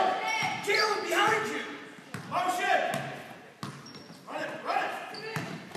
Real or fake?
real